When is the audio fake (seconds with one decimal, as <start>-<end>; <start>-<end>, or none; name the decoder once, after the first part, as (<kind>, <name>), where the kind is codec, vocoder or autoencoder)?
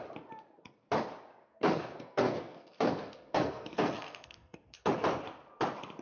1.4-4.9 (codec, SNAC)